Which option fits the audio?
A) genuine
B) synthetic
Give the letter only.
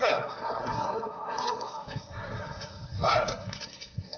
B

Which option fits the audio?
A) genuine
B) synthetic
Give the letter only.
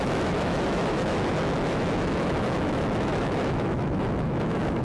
B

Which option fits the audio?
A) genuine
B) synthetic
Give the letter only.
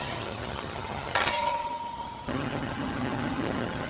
B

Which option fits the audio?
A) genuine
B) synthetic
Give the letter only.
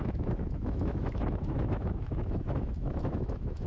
B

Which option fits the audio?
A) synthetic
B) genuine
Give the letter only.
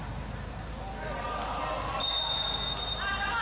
B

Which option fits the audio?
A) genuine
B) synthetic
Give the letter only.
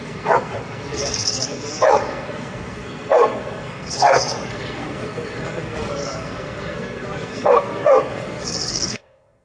B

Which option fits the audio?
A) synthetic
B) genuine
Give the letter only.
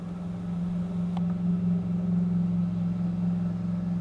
B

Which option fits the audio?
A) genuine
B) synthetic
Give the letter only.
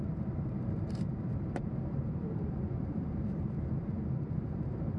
B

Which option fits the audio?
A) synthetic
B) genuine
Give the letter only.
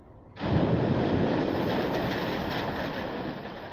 A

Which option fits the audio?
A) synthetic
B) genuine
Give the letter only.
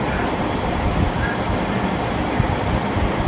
B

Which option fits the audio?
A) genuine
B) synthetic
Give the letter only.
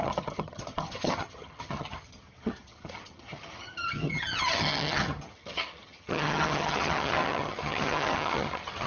B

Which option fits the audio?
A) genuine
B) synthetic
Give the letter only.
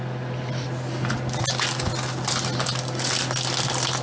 A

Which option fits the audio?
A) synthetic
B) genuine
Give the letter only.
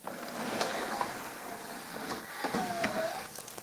A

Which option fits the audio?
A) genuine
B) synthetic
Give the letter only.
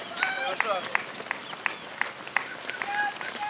A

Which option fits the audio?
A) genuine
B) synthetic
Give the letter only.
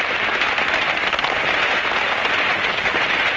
A